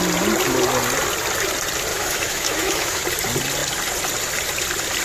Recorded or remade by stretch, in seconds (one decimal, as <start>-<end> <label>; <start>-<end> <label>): 0.0-1.9 recorded; 1.9-3.0 remade; 3.0-5.0 recorded